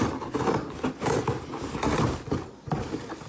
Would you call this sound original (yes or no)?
yes